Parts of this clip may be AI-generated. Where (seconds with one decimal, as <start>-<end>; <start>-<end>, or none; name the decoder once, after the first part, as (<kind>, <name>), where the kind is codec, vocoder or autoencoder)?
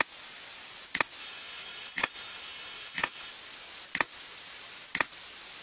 1.2-3.3 (autoencoder, DAC-VAE)